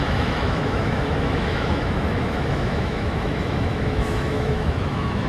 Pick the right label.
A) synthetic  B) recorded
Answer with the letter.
A